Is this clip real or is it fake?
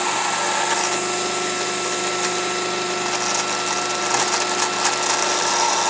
real